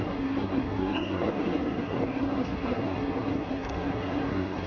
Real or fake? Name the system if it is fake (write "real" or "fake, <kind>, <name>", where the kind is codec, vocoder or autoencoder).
fake, codec, SNAC